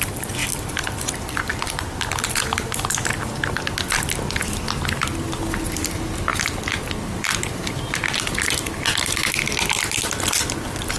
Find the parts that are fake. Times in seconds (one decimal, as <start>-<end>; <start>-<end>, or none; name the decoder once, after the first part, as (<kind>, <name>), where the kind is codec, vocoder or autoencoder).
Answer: 0.4-1.1 (vocoder, BigVGAN v2)